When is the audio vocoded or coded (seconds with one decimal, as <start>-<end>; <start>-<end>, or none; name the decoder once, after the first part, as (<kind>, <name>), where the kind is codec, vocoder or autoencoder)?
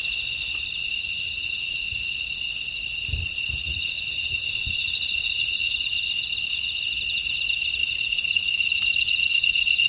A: 0.8-2.5 (vocoder, Vocos); 3.2-5.7; 7.8-9.9